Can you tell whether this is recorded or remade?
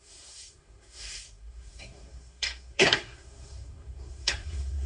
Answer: remade